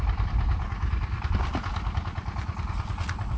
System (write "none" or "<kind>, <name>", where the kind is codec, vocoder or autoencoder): none